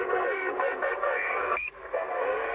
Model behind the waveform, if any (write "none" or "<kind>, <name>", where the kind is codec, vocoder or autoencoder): codec, SNAC